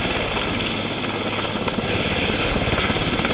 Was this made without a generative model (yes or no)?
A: yes